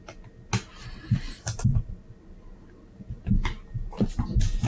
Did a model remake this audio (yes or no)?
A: no